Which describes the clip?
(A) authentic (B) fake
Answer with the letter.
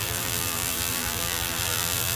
B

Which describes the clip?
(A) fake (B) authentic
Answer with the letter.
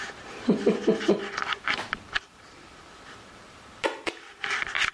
A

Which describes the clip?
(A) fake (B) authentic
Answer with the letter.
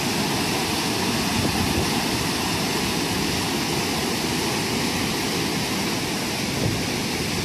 B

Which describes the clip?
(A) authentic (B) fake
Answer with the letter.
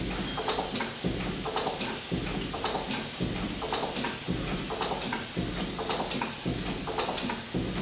A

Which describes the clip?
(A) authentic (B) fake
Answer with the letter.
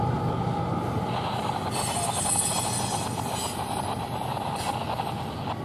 A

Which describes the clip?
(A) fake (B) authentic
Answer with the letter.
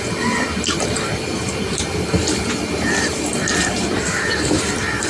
A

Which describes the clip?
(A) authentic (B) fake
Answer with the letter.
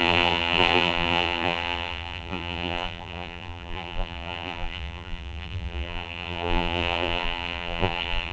B